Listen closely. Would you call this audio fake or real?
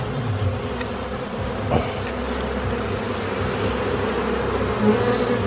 real